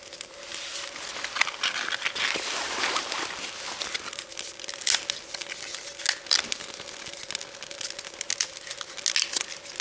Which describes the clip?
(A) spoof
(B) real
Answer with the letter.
B